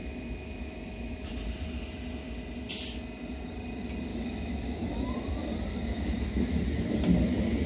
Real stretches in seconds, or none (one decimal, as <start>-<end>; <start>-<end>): 1.3-4.1; 5.1-7.7